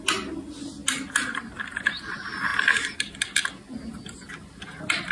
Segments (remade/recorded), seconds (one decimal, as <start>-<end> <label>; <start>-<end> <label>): 0.0-5.1 recorded